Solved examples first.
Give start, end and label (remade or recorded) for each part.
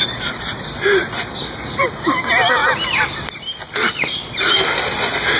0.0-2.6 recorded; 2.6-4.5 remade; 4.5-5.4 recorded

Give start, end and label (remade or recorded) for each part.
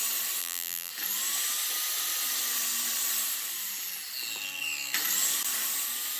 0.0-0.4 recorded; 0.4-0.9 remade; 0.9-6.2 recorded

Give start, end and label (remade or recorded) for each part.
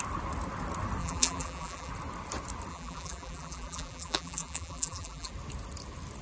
0.0-1.0 recorded; 1.0-1.9 remade; 1.9-2.7 recorded; 2.7-5.3 remade; 5.3-6.2 recorded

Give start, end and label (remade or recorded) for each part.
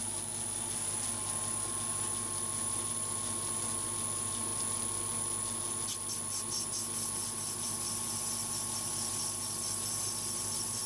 0.0-10.9 recorded